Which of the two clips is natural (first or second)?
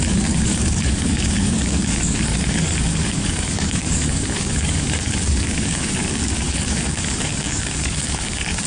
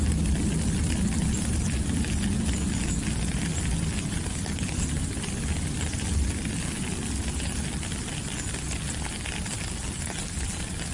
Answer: second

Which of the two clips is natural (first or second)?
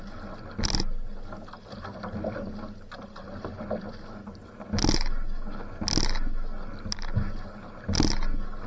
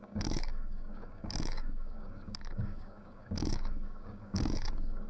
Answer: first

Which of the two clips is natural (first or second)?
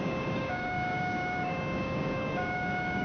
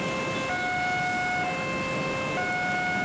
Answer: second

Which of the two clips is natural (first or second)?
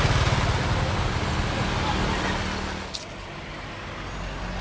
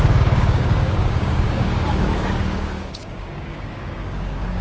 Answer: first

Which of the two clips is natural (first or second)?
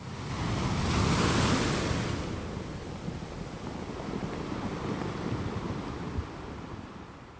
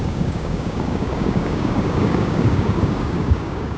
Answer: first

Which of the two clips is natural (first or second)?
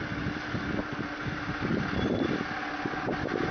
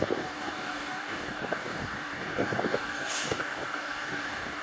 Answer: first